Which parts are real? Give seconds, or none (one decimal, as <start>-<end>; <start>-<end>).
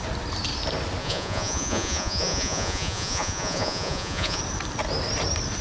0.0-1.0; 4.4-5.6